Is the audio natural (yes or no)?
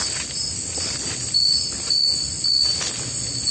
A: yes